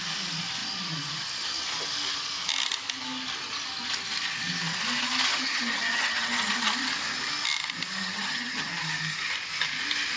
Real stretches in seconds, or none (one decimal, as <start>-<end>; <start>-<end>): 0.0-5.3; 6.5-8.0; 8.7-10.2